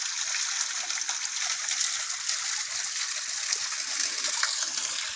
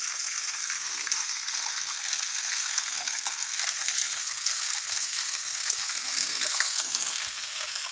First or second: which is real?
first